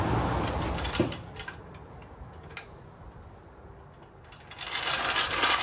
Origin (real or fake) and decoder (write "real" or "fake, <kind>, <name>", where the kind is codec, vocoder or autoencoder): real